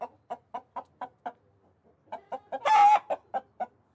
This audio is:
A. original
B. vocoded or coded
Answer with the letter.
A